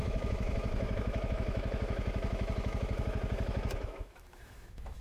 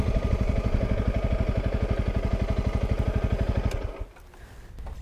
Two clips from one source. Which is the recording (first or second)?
second